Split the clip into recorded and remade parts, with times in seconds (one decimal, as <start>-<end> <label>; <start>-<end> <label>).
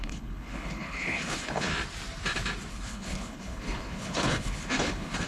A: 0.0-1.7 remade; 1.7-2.7 recorded; 2.7-5.3 remade